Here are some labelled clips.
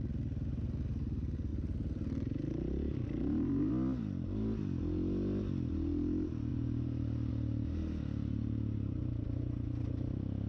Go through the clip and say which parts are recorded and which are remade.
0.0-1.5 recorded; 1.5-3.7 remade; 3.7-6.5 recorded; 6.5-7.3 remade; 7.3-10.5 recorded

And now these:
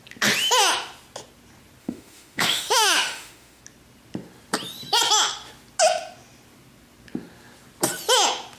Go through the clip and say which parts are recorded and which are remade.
0.0-1.8 recorded; 1.8-3.6 remade; 3.6-8.6 recorded

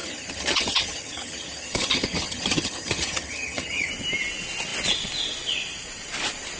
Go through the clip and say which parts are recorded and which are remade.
0.0-3.9 remade; 3.9-6.6 recorded

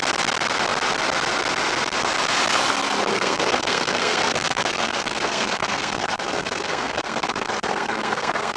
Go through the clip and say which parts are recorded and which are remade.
0.0-3.1 recorded; 3.1-8.6 remade

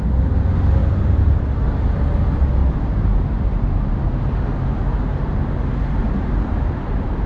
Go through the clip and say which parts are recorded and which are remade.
0.0-0.8 recorded; 0.8-1.4 remade; 1.4-2.6 recorded; 2.6-4.0 remade; 4.0-7.3 recorded

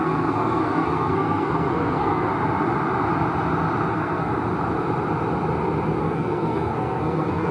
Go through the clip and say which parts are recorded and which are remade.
0.0-2.3 remade; 2.3-3.9 recorded; 3.9-4.3 remade; 4.3-6.0 recorded; 6.0-7.5 remade

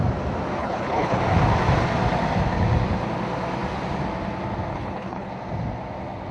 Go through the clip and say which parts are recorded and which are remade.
0.0-0.6 recorded; 0.6-1.2 remade; 1.2-4.7 recorded; 4.7-5.3 remade; 5.3-6.3 recorded

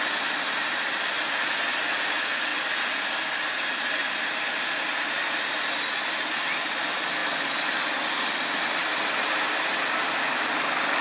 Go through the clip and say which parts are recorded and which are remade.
0.0-11.0 recorded